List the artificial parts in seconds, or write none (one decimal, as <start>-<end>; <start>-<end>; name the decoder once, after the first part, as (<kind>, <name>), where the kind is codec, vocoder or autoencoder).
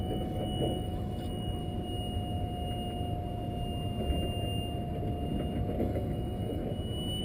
0.0-1.6 (autoencoder, DAC-VAE); 5.8-6.6